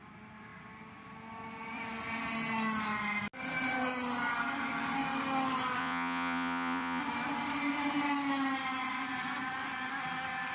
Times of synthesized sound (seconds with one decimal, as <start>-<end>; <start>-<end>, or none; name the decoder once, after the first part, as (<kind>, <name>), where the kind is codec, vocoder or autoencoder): 5.8-7.0 (vocoder, Vocos)